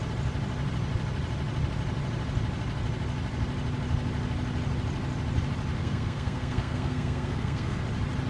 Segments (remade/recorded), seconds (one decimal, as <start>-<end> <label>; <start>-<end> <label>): 0.0-5.8 recorded; 5.8-7.8 remade; 7.8-8.3 recorded